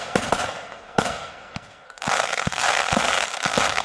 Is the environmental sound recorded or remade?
remade